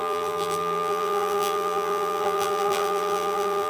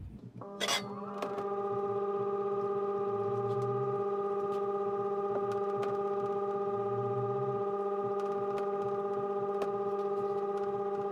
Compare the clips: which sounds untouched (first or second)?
second